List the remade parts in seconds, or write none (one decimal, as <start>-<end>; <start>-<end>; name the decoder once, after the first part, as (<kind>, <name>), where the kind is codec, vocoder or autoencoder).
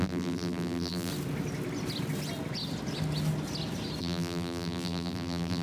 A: 0.0-1.1 (vocoder, BigVGAN v2); 4.0-5.6